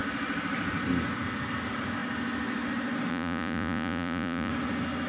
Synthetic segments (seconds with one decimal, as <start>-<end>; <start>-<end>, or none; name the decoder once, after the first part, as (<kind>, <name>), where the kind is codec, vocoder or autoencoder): 3.1-4.5 (vocoder, Vocos)